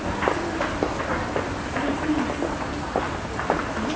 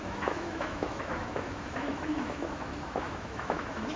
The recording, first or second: first